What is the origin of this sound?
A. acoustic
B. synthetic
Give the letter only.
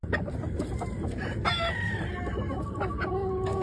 A